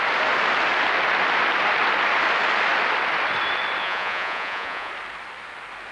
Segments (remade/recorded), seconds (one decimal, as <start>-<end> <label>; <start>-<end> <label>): 0.0-3.8 recorded; 3.8-4.9 remade; 4.9-5.9 recorded